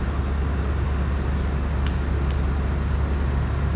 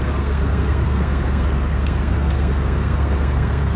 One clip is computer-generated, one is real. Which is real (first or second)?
first